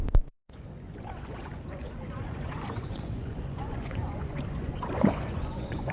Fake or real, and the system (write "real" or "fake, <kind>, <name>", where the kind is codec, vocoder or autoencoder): fake, vocoder, Vocos